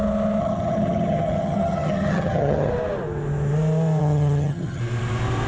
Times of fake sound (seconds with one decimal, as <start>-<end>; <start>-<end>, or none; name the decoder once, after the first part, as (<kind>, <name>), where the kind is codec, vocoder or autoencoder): 0.4-2.7 (vocoder, HiFi-GAN); 4.0-4.8